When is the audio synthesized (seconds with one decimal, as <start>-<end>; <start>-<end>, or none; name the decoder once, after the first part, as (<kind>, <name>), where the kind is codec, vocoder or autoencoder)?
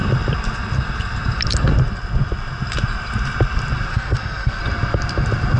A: 3.9-4.6 (codec, SNAC)